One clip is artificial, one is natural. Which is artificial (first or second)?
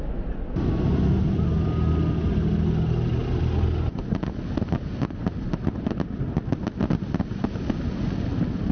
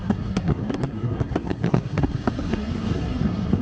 second